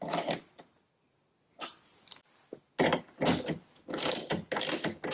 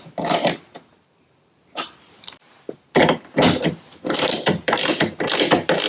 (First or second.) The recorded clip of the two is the first